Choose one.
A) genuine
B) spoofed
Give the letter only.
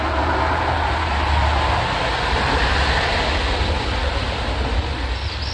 A